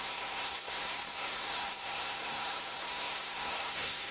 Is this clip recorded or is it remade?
remade